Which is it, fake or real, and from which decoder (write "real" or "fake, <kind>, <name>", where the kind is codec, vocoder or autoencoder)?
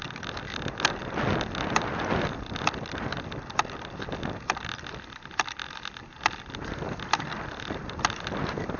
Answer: real